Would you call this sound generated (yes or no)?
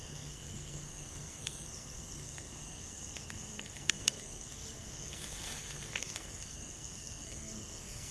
yes